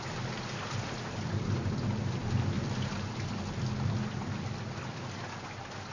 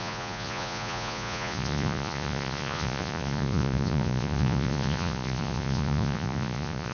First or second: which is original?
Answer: first